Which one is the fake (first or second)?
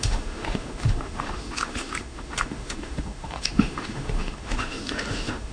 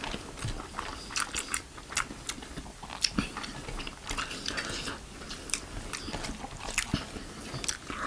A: first